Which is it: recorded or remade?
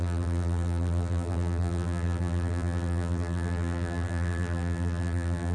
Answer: remade